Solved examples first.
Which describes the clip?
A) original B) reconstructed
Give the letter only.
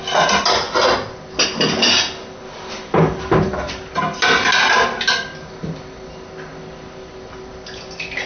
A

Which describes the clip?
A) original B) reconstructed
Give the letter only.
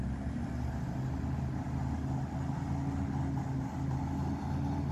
A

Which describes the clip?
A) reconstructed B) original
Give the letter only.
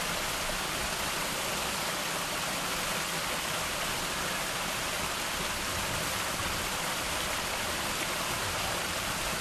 B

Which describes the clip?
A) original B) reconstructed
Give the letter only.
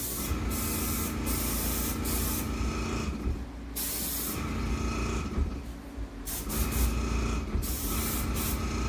A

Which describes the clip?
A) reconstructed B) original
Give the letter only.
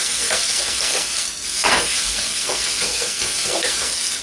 A